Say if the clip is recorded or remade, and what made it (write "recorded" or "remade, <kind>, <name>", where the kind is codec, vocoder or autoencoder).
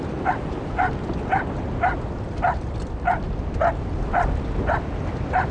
recorded